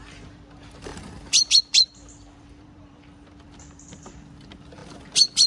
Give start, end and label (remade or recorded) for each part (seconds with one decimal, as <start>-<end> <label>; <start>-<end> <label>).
0.0-5.5 remade